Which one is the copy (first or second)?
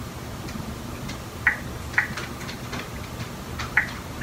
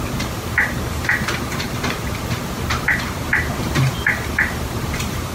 second